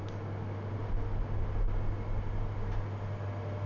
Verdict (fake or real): real